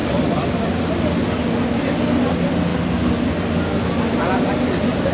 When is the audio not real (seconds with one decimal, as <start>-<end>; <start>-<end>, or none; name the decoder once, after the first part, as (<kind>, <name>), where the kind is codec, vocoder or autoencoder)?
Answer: none